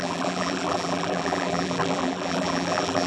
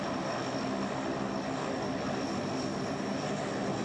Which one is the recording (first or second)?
second